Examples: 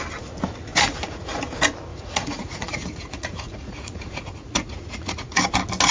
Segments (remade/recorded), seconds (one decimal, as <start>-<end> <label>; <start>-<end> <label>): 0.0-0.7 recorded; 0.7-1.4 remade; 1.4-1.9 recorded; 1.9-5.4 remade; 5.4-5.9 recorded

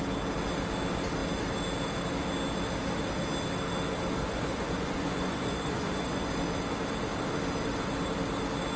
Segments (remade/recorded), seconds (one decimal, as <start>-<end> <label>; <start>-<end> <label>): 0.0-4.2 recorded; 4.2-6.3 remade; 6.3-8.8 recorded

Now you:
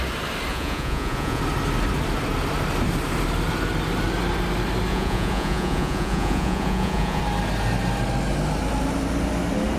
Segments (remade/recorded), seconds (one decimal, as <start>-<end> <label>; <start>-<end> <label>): 0.0-0.5 recorded; 0.5-1.4 remade; 1.4-4.9 recorded; 4.9-7.2 remade; 7.2-9.8 recorded